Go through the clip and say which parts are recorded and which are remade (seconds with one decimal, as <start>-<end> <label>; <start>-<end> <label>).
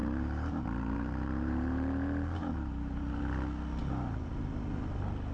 0.0-3.2 remade; 3.2-5.3 recorded